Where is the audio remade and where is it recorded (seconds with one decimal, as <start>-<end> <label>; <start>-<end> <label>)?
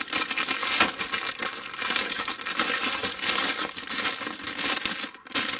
0.0-5.6 recorded